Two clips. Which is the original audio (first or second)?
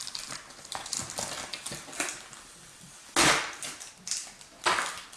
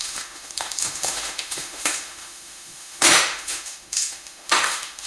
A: first